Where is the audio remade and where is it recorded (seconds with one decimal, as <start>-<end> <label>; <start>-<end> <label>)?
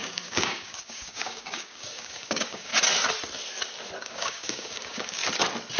0.0-2.7 remade; 2.7-4.0 recorded; 4.0-5.2 remade; 5.2-5.8 recorded